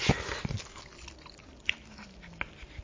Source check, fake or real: real